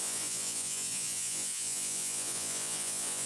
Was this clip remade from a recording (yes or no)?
yes